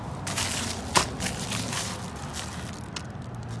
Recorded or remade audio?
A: recorded